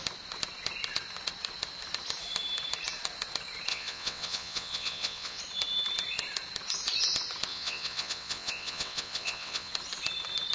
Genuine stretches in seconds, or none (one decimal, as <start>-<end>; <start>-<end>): 0.0-3.7; 5.4-7.5; 9.7-10.5